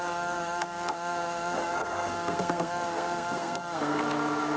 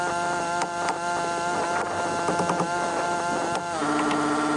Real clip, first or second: second